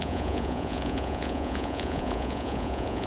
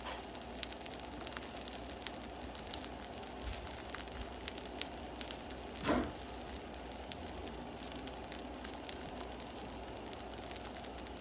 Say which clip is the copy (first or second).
first